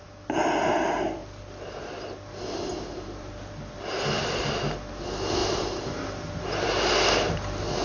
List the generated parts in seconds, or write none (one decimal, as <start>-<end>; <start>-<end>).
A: 2.7-3.3; 5.4-6.9